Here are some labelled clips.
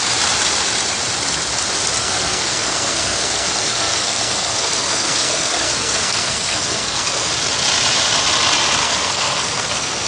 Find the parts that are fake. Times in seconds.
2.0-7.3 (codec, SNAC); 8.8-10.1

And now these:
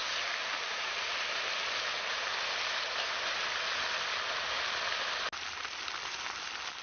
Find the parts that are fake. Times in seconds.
none

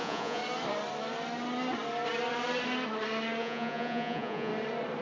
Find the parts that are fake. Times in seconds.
0.0-0.4 (vocoder, Vocos); 3.4-4.5

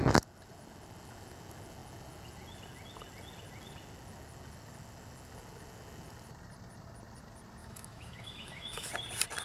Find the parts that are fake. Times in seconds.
7.6-8.9 (autoencoder, DAC-VAE)

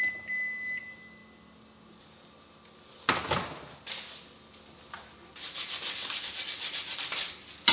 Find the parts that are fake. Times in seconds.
none